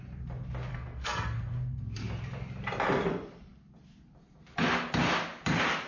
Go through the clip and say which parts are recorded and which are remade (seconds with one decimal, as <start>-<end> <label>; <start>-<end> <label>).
0.0-0.7 recorded; 0.7-1.8 remade; 1.8-5.9 recorded